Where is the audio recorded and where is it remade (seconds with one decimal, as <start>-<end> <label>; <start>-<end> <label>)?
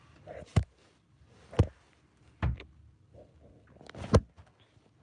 0.0-5.0 recorded